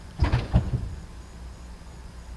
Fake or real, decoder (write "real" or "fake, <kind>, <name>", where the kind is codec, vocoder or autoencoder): fake, vocoder, Vocos